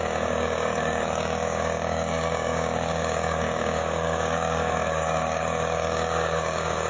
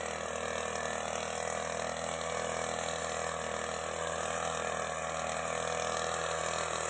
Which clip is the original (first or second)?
second